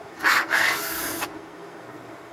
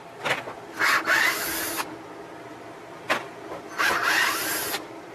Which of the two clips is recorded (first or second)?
second